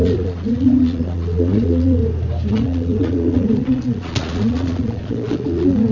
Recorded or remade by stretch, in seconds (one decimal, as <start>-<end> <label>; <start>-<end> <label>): 0.0-2.0 remade; 2.0-2.5 recorded; 2.5-5.9 remade